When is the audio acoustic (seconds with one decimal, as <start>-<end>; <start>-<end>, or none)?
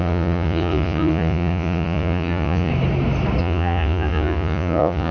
2.7-3.4